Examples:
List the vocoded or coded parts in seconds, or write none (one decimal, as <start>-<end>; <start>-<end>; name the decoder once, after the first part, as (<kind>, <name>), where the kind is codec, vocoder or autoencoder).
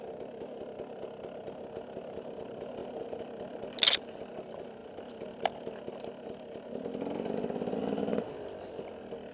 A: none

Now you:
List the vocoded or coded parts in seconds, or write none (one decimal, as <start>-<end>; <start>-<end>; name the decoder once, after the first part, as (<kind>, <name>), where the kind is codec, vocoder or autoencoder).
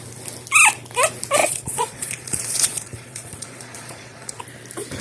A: 1.4-4.4 (vocoder, Vocos)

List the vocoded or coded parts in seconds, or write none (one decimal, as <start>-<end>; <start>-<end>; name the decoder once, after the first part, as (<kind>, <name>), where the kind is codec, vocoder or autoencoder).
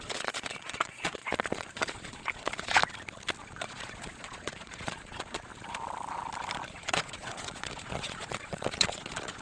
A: 0.0-2.8 (vocoder, Vocos); 3.4-5.5; 6.6-9.4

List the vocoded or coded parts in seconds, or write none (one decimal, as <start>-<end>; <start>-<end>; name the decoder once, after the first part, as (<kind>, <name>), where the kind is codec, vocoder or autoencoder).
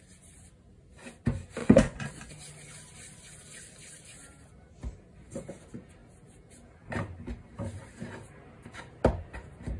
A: 1.6-2.3 (vocoder, Vocos)